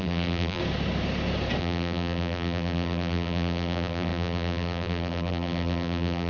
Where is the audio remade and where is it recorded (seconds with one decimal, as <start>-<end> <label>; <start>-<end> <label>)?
0.0-0.6 remade; 0.6-1.6 recorded; 1.6-6.3 remade